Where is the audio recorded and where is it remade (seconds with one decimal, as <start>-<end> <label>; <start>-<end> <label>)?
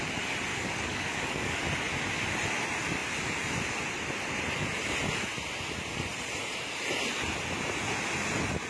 0.0-0.5 recorded; 0.5-1.6 remade; 1.6-8.7 recorded